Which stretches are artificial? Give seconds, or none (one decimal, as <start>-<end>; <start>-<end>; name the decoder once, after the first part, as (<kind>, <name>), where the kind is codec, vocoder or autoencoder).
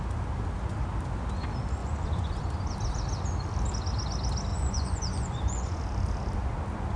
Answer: 1.8-2.4 (vocoder, Vocos); 4.5-5.8